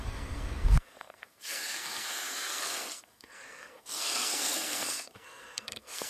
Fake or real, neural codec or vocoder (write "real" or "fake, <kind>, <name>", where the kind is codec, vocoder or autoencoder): fake, codec, SNAC